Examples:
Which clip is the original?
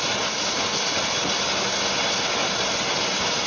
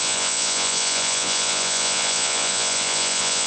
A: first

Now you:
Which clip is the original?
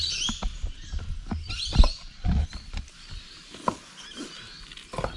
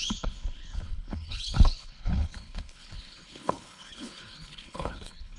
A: first